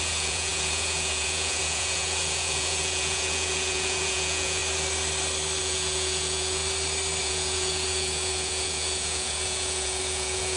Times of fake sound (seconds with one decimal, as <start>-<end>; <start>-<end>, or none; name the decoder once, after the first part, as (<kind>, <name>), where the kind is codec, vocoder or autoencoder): 0.0-4.6 (vocoder, Vocos); 5.6-6.6; 7.2-10.6